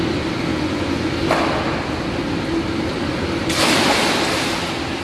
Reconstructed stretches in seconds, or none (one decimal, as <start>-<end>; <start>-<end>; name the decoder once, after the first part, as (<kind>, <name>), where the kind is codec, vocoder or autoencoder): 0.5-1.1 (vocoder, Vocos)